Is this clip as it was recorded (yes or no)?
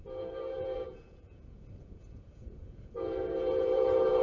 no